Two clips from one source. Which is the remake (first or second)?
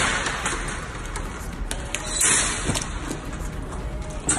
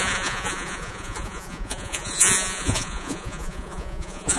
second